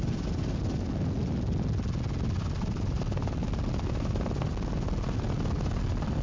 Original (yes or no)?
yes